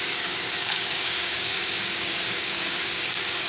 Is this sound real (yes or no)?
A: no